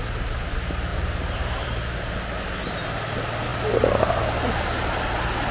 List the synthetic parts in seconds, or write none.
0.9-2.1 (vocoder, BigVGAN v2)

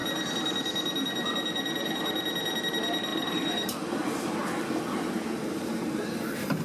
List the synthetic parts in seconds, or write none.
2.6-4.4 (vocoder, BigVGAN v2); 5.4-6.6

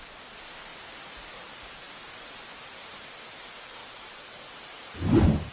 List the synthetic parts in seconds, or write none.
0.7-3.1 (vocoder, BigVGAN v2); 3.8-5.5

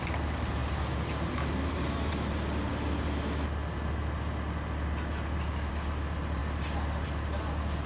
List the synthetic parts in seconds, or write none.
none

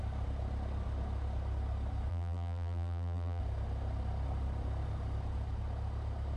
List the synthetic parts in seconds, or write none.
2.1-3.4 (vocoder, BigVGAN v2)

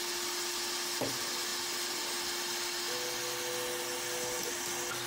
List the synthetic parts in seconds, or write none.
none